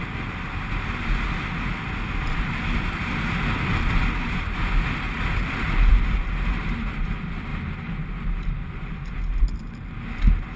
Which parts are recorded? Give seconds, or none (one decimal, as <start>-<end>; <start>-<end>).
0.0-10.6